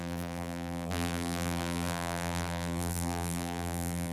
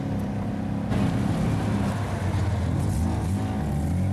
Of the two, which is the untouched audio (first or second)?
second